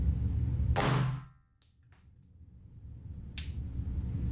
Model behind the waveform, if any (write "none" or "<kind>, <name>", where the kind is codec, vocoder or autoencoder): none